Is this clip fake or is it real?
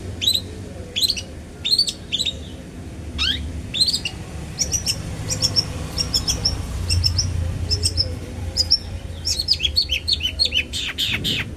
fake